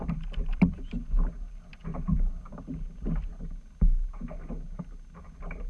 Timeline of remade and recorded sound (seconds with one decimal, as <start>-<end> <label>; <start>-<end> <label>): 0.0-5.7 recorded